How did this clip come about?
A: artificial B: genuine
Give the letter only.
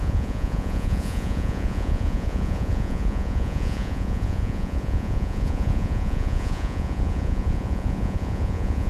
A